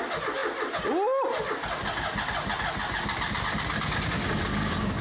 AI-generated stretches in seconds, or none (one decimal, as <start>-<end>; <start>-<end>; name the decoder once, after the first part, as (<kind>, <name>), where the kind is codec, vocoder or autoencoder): none